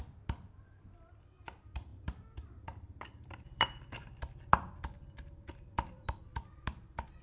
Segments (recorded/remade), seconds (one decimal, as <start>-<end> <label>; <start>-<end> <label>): 0.0-1.9 recorded; 1.9-6.2 remade; 6.2-7.2 recorded